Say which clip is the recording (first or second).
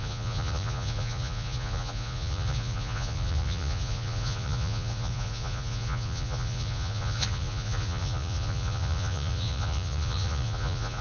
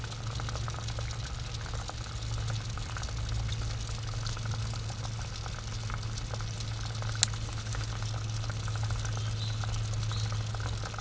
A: second